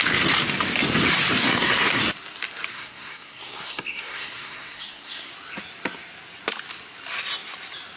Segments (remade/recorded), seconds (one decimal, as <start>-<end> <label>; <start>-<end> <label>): 0.0-1.4 recorded; 1.4-2.0 remade; 2.0-2.7 recorded; 2.7-5.3 remade; 5.3-8.0 recorded